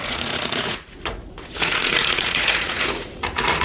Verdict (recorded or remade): remade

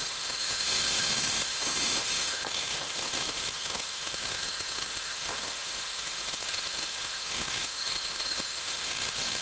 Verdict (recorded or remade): remade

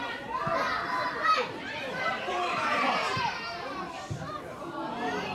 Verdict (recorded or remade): remade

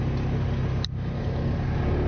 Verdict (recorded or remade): recorded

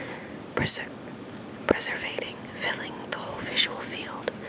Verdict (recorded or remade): recorded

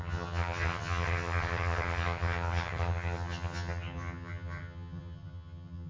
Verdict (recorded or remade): remade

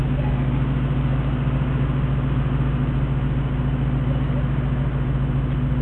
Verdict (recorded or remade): recorded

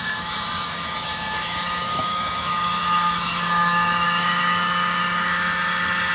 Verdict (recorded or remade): remade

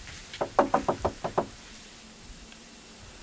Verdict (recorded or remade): recorded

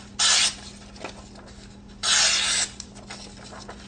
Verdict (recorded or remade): recorded